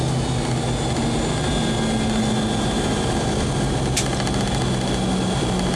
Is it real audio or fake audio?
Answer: real